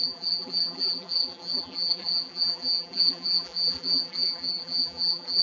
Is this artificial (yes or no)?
yes